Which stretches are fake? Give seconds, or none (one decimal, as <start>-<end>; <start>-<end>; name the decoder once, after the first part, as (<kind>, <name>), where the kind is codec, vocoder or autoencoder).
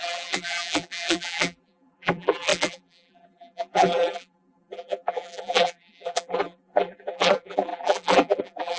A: 0.0-8.8 (vocoder, BigVGAN v2)